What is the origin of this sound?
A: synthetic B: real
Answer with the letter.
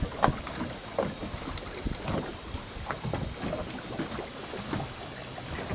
B